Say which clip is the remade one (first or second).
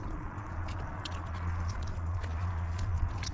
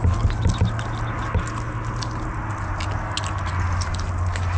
first